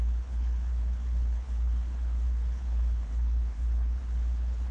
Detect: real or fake fake